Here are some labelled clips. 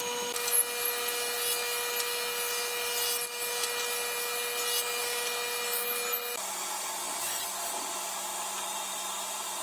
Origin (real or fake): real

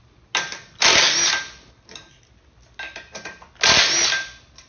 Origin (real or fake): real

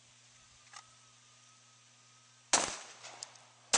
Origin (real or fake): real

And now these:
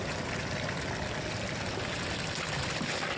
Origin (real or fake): real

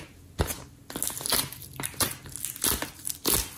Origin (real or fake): real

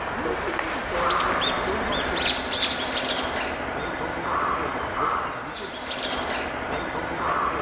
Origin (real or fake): real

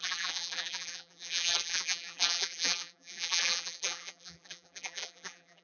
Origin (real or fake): fake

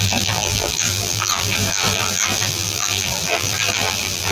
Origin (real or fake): fake